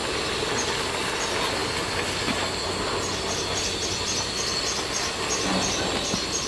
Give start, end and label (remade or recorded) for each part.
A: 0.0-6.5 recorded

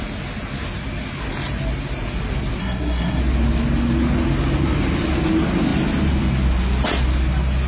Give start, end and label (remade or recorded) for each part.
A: 0.0-2.6 recorded; 2.6-3.2 remade; 3.2-7.7 recorded

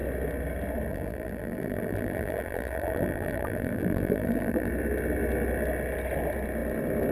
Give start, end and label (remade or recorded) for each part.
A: 0.0-0.9 recorded; 0.9-4.7 remade; 4.7-7.1 recorded

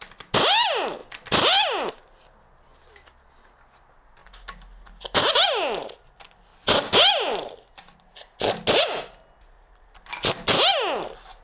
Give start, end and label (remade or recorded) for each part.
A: 0.0-11.4 recorded

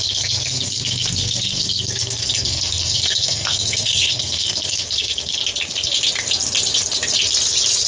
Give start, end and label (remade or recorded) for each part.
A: 0.0-5.4 remade; 5.4-7.9 recorded

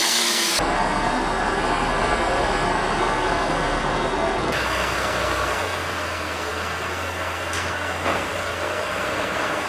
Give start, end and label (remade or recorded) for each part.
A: 0.0-9.7 remade

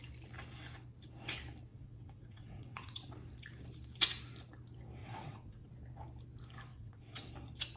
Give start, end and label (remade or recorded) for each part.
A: 0.0-1.7 recorded; 1.7-3.1 remade; 3.1-5.0 recorded; 5.0-5.7 remade; 5.7-6.7 recorded; 6.7-7.3 remade; 7.3-7.8 recorded

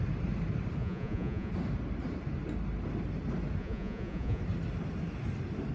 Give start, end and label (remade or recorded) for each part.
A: 0.0-0.8 recorded; 0.8-1.5 remade; 1.5-3.6 recorded; 3.6-4.4 remade; 4.4-5.7 recorded